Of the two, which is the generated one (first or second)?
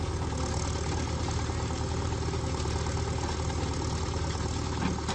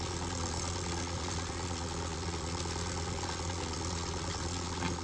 second